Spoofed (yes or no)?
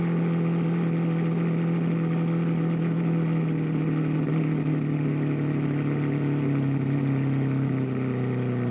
no